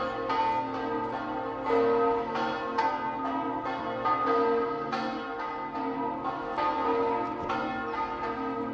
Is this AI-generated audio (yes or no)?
no